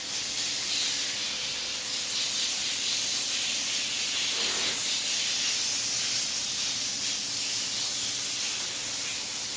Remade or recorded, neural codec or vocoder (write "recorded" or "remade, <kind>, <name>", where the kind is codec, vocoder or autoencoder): recorded